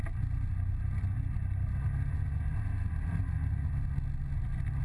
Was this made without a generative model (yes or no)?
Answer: yes